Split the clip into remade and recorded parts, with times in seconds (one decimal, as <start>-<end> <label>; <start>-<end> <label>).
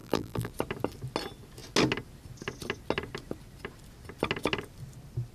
0.0-0.5 remade; 0.5-5.3 recorded